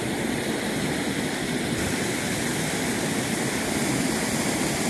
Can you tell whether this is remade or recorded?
recorded